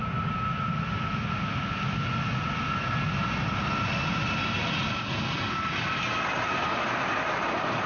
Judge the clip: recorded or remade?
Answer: recorded